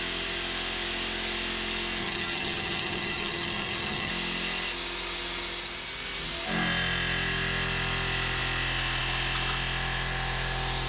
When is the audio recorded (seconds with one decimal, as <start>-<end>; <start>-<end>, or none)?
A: 0.0-2.0; 4.1-10.9